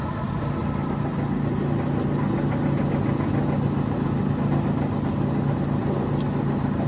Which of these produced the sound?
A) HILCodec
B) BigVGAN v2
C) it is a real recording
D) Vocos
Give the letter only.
C